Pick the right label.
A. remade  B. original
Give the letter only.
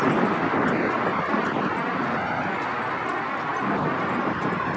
B